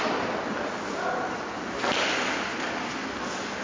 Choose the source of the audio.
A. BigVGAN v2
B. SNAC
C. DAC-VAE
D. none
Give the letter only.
D